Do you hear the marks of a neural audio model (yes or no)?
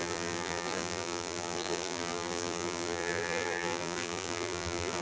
yes